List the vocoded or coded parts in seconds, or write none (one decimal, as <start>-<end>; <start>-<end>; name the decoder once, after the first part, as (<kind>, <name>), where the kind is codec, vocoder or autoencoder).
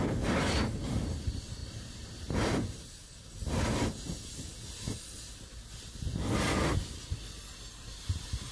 1.6-2.9 (vocoder, BigVGAN v2)